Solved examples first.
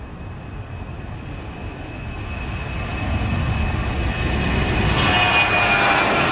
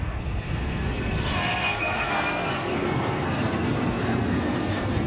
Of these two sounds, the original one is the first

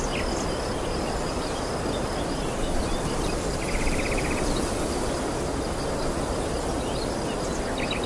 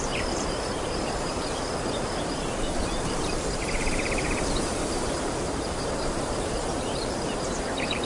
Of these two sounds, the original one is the first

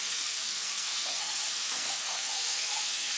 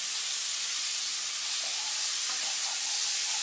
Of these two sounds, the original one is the second